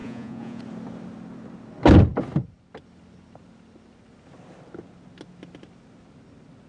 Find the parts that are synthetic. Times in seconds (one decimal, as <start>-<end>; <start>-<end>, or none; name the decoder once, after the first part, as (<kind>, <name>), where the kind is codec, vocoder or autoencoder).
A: 0.0-0.6 (vocoder, Vocos)